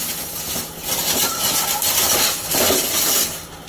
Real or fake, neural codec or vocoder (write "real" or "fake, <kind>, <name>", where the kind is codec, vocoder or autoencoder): real